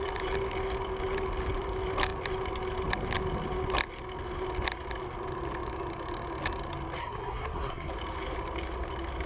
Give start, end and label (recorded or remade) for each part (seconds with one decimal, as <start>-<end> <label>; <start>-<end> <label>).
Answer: 0.0-7.0 recorded; 7.0-7.9 remade; 7.9-9.3 recorded